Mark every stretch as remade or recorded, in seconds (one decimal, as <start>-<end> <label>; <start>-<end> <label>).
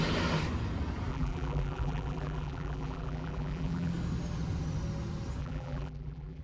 0.0-1.1 recorded; 1.1-3.9 remade; 3.9-5.4 recorded; 5.4-6.4 remade